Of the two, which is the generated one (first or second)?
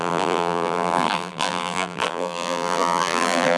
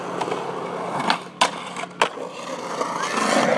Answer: first